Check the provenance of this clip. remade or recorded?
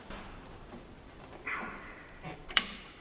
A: remade